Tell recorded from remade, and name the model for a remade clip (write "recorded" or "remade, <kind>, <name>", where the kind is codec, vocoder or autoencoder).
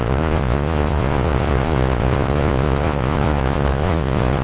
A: remade, vocoder, Vocos